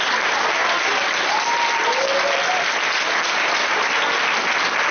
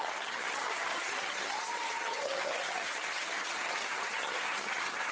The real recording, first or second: first